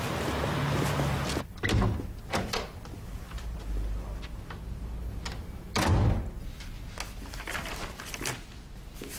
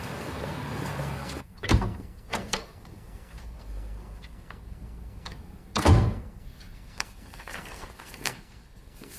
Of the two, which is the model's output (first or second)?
second